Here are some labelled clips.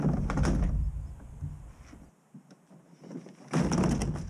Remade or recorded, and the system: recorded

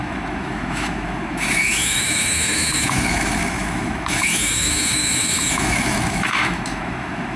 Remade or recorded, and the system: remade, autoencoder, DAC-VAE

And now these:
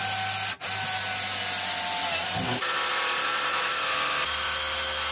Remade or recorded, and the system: recorded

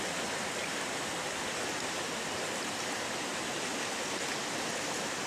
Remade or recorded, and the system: recorded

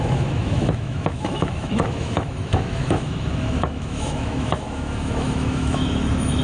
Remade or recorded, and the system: remade, autoencoder, DAC-VAE